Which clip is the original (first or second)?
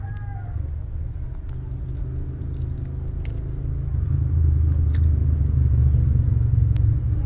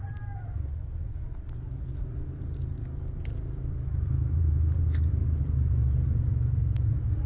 first